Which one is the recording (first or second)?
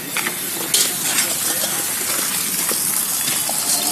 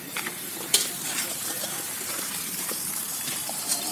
first